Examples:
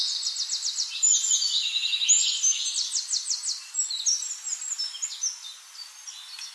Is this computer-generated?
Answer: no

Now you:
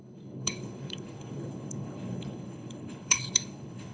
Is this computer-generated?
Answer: yes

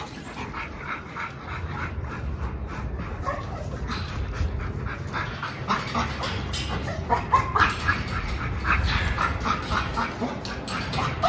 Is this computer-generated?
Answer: no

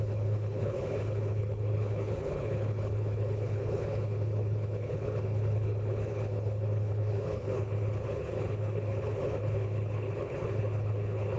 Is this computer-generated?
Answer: yes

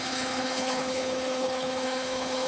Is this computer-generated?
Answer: yes